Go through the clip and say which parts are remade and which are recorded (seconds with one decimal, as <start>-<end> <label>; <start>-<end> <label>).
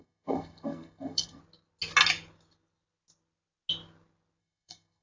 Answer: 0.0-1.4 remade; 1.4-4.4 recorded; 4.4-5.0 remade